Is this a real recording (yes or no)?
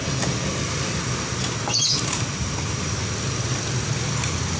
yes